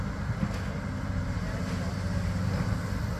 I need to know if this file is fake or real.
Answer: real